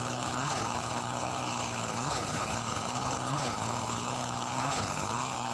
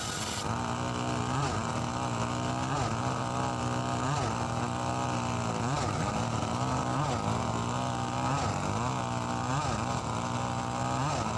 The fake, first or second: first